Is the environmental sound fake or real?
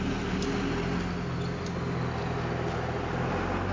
real